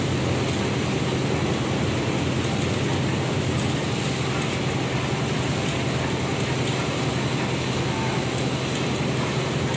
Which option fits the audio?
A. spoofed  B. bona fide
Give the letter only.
B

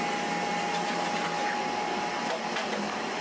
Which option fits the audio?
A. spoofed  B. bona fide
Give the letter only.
B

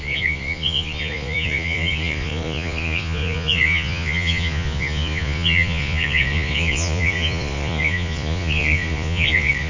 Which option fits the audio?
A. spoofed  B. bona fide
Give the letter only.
A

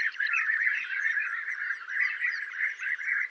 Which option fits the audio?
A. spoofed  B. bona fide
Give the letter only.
A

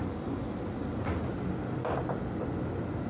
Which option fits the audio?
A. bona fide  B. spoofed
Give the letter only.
A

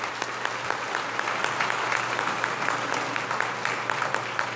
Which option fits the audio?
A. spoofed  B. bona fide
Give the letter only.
B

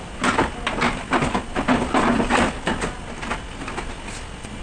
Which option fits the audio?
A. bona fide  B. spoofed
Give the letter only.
A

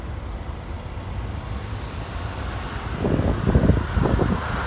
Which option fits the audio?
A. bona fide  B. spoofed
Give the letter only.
A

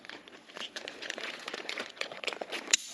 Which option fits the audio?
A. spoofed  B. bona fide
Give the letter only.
A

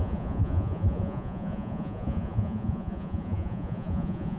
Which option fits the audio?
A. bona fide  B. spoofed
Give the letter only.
B